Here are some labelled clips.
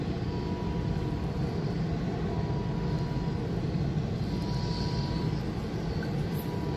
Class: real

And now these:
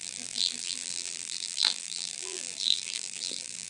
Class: fake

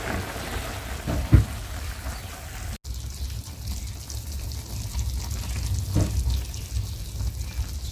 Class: real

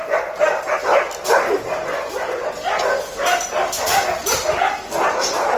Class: real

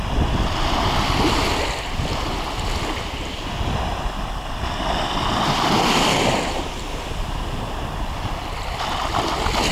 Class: real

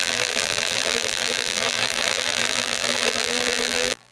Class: fake